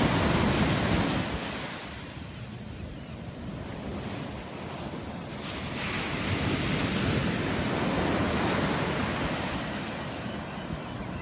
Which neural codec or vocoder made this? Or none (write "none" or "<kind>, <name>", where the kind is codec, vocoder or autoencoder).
none